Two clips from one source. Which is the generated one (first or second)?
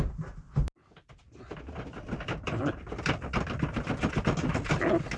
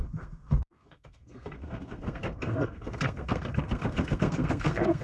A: second